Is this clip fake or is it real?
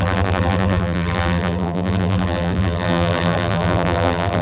fake